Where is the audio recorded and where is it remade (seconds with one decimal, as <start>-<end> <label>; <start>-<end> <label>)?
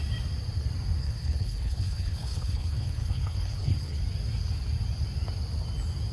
0.0-1.0 recorded; 1.0-4.0 remade; 4.0-6.1 recorded